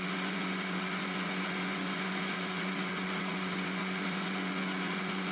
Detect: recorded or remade remade